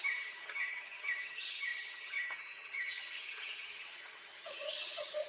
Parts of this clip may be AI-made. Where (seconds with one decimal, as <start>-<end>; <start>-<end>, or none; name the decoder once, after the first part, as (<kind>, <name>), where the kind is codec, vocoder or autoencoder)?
0.0-5.3 (vocoder, HiFi-GAN)